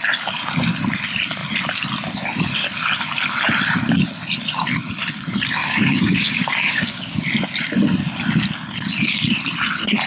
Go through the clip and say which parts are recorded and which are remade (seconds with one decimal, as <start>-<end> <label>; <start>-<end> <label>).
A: 0.0-5.6 recorded; 5.6-7.2 remade; 7.2-10.1 recorded